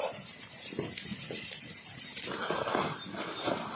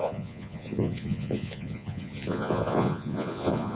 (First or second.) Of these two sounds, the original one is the first